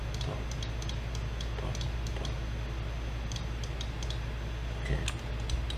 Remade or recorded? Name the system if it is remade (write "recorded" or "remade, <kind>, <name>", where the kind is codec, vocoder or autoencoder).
recorded